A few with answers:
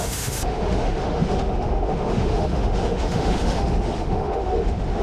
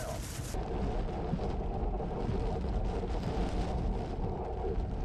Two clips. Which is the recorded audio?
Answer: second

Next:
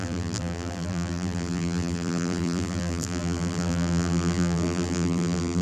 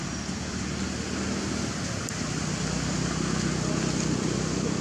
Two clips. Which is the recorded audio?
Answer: second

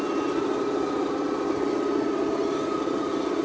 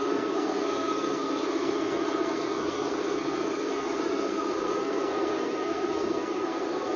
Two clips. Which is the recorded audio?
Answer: first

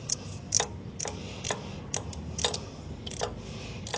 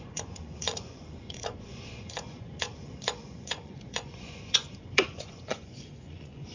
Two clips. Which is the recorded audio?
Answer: first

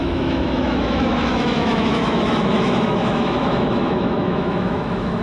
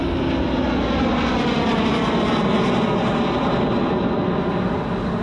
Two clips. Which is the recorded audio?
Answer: second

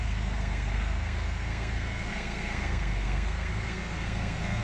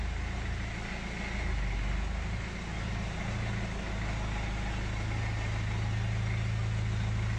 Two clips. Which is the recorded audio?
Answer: second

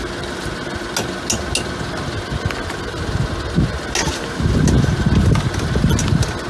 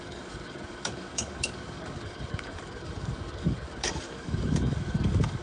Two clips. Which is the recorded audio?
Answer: first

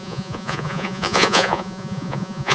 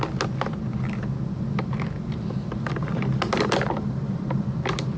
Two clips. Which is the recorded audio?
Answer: second